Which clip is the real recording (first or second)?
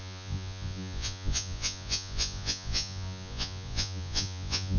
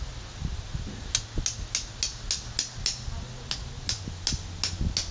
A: second